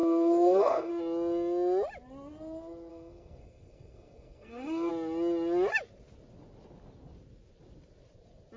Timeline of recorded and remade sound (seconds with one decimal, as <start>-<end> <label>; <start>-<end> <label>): 0.0-0.9 remade; 0.9-2.9 recorded; 2.9-4.9 remade; 4.9-8.6 recorded

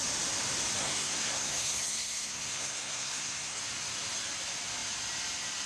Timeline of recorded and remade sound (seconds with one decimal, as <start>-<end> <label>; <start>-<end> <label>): 0.0-0.8 recorded; 0.8-3.6 remade; 3.6-5.7 recorded

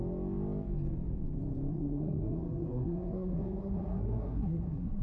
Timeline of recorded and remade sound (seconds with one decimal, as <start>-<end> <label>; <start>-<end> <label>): 0.0-1.7 recorded; 1.7-5.0 remade

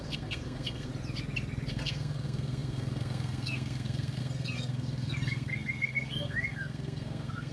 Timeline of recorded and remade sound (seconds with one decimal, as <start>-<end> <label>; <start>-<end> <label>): 0.0-0.9 remade; 0.9-1.7 recorded; 1.7-7.5 remade

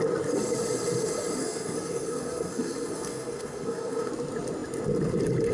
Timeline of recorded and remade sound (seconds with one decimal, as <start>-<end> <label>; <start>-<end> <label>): 0.0-1.4 recorded; 1.4-4.1 remade; 4.1-5.5 recorded